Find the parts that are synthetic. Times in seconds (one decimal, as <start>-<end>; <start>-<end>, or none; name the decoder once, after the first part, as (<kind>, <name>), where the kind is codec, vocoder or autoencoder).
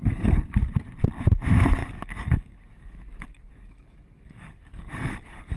0.0-0.6 (codec, DAC); 1.8-5.6